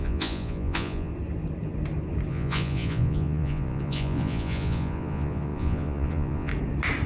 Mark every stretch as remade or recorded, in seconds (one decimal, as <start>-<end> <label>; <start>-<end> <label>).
0.0-1.1 remade; 1.1-2.3 recorded; 2.3-6.5 remade; 6.5-7.1 recorded